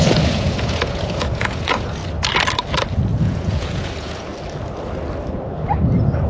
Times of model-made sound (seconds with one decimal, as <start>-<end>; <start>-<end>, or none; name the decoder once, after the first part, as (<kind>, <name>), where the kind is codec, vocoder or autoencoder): 0.0-2.0 (vocoder, Vocos); 3.1-4.3